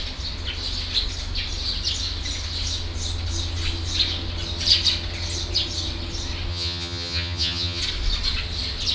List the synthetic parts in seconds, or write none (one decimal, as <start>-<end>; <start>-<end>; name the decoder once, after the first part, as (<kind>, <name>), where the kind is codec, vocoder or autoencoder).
6.5-7.8 (vocoder, HiFi-GAN)

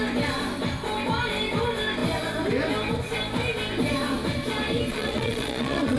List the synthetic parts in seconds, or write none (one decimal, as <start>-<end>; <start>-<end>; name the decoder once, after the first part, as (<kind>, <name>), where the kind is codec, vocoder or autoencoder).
4.9-6.0 (vocoder, Vocos)

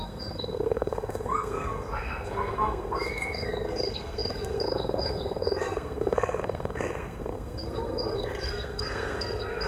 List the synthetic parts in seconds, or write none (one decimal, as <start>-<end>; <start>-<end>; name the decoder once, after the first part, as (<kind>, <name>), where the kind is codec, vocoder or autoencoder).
0.0-9.7 (codec, SNAC)